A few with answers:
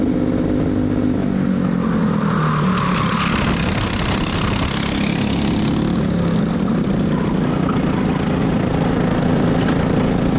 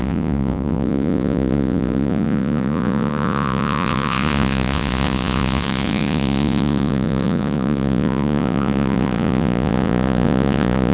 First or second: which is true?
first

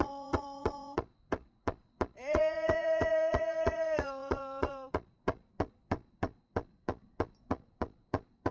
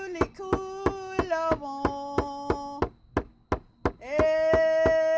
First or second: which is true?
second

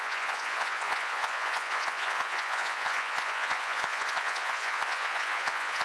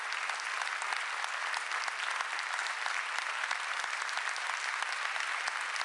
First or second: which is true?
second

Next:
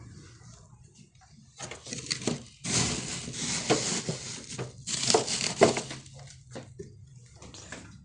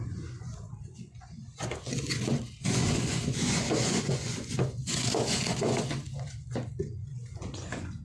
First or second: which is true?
first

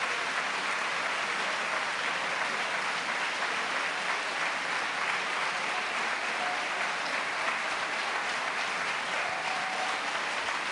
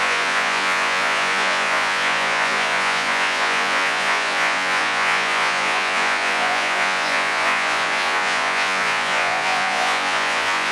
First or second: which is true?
first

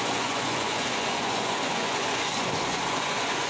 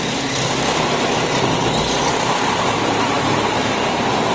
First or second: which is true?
second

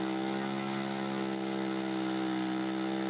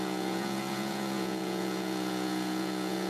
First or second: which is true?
first